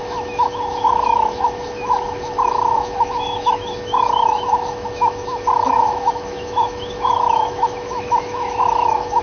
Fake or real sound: fake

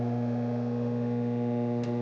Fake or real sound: fake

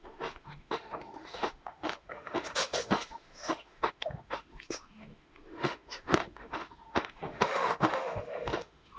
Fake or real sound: fake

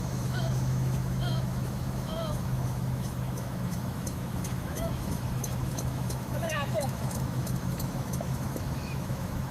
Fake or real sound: fake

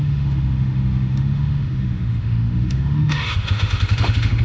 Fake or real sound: fake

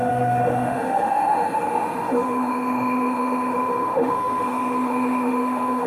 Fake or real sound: fake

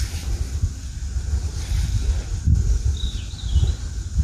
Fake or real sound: real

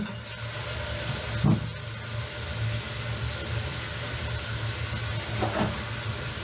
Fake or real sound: real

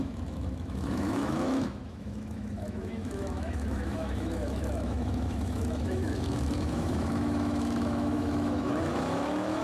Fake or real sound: fake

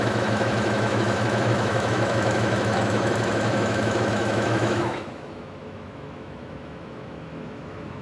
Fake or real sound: fake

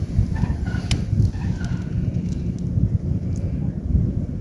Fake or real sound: real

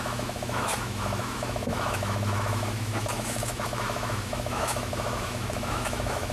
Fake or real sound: fake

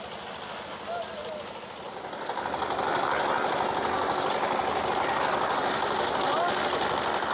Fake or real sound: real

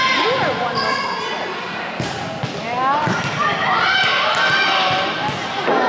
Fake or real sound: real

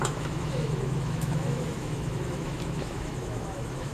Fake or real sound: fake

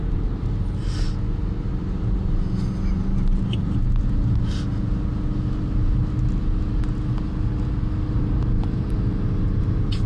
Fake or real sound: real